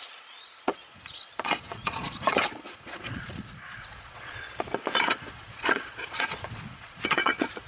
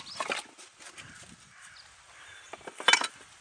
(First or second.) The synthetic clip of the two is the first